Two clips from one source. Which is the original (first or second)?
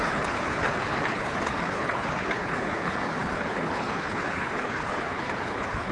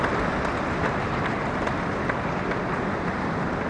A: second